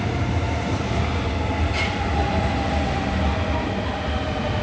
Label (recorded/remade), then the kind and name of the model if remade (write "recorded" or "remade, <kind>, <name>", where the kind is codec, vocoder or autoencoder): recorded